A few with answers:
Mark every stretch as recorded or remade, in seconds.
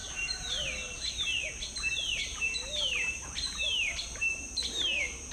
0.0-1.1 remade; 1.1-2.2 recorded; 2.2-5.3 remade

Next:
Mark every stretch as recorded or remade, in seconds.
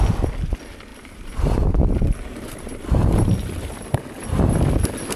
0.0-0.9 recorded; 0.9-4.0 remade; 4.0-5.2 recorded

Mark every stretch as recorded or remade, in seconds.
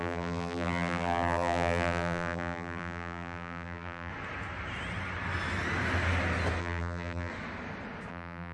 0.0-4.1 remade; 4.1-6.6 recorded; 6.6-7.3 remade; 7.3-8.1 recorded; 8.1-8.5 remade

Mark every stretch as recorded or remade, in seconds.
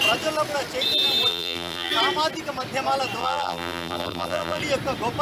0.0-1.3 recorded; 1.3-1.9 remade; 1.9-3.2 recorded; 3.2-4.6 remade; 4.6-5.2 recorded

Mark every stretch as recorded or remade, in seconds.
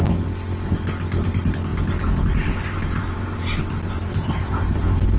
0.0-1.7 recorded; 1.7-4.8 remade; 4.8-5.2 recorded